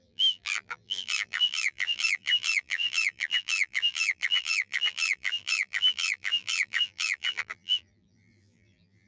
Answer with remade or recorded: remade